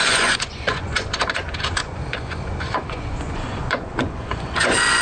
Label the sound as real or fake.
fake